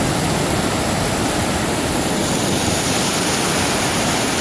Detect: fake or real real